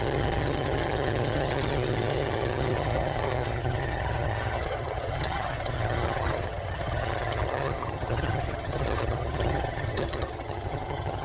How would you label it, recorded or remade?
remade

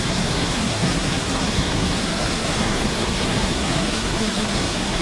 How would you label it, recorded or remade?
remade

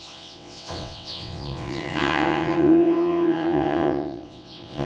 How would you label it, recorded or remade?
remade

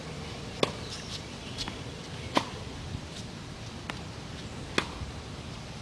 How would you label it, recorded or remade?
recorded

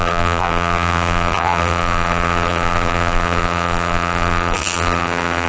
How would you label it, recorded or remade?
remade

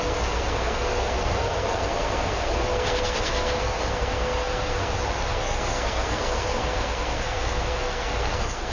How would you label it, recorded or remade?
remade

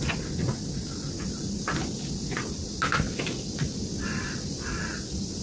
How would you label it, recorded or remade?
recorded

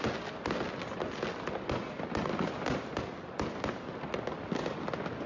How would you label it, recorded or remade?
recorded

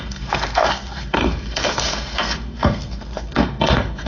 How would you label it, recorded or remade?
remade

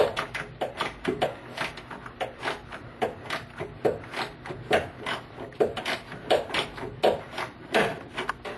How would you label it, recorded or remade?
recorded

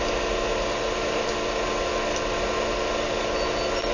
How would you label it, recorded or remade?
recorded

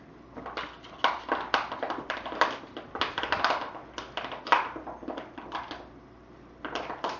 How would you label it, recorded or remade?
recorded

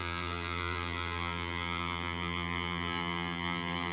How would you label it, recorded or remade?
remade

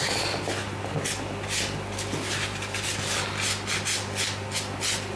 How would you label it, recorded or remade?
recorded